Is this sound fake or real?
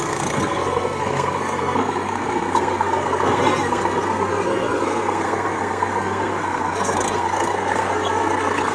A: fake